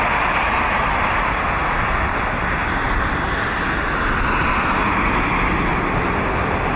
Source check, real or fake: real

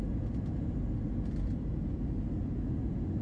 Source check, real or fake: real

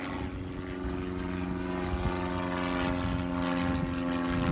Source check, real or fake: real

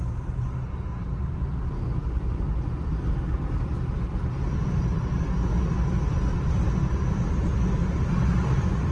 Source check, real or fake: real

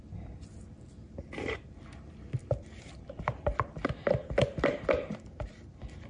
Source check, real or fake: fake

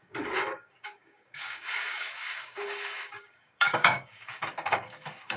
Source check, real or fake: fake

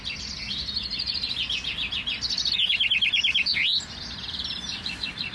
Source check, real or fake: real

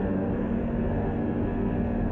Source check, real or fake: fake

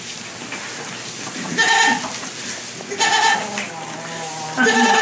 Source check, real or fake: real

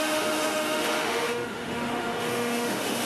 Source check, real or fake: fake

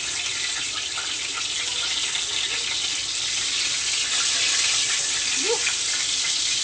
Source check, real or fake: real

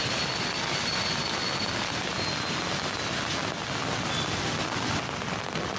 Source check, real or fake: real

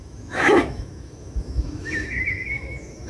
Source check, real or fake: fake